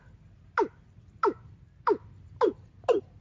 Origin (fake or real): real